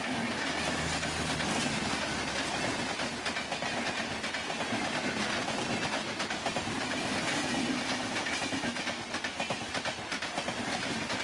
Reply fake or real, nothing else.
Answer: real